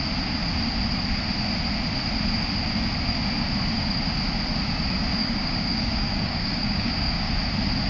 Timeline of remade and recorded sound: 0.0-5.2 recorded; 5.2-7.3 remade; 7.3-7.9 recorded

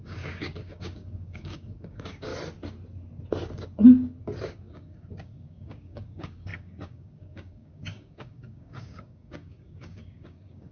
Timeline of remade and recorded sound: 0.0-2.3 remade; 2.3-4.4 recorded; 4.4-10.7 remade

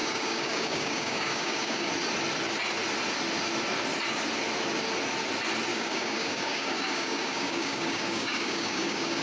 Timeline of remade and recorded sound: 0.0-1.9 remade; 1.9-5.7 recorded; 5.7-9.2 remade

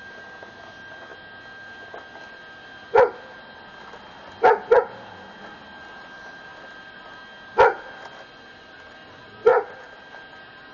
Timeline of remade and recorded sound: 0.0-10.7 recorded

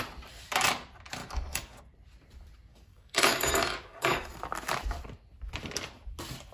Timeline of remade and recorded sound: 0.0-1.2 recorded; 1.2-1.8 remade; 1.8-2.7 recorded; 2.7-4.4 remade; 4.4-6.5 recorded